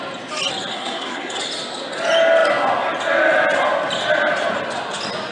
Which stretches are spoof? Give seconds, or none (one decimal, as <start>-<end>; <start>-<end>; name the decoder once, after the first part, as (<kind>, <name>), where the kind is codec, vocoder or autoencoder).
0.7-1.4 (codec, SNAC)